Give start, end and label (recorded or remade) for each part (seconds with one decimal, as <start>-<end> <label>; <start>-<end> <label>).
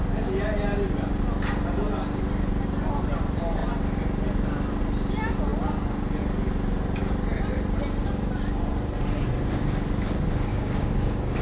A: 0.0-10.5 recorded; 10.5-11.4 remade